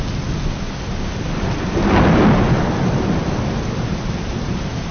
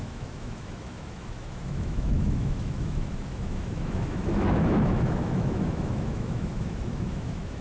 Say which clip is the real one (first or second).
first